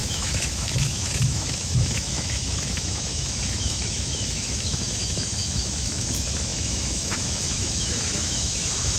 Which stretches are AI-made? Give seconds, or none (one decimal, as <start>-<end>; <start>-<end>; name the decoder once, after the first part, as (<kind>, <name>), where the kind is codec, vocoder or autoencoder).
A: 0.0-9.0 (autoencoder, DAC-VAE)